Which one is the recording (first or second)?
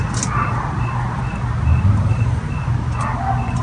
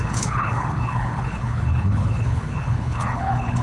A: first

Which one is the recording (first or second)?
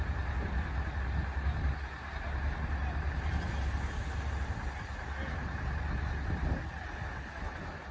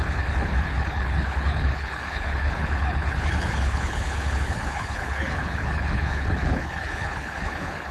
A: first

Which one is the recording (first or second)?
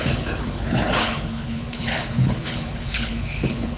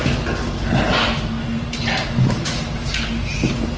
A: second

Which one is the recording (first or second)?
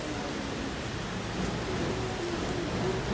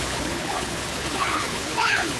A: first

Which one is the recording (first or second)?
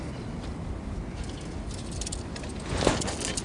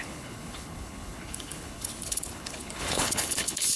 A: first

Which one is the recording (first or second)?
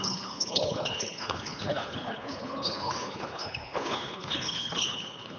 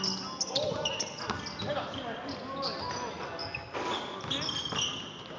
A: second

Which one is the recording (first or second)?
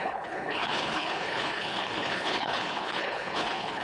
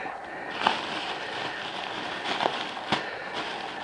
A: second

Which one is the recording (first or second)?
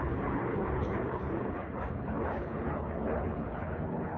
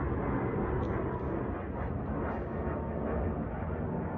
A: second